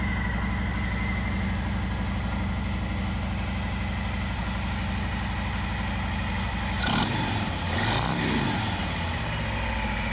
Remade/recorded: recorded